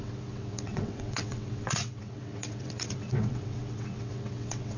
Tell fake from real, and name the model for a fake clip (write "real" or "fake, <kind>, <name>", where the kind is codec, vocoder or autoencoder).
fake, vocoder, WaveNeXt